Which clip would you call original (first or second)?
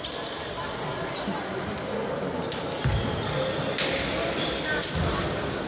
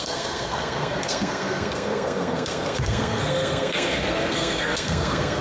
first